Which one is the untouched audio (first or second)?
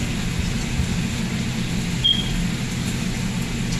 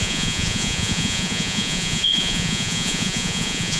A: first